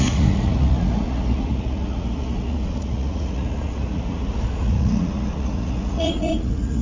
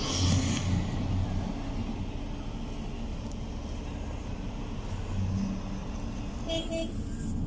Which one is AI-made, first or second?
first